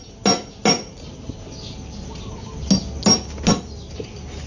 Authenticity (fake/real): real